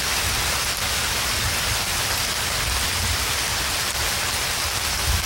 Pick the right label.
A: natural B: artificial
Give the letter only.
A